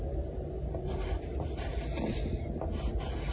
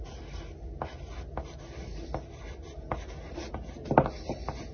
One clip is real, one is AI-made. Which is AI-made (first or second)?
first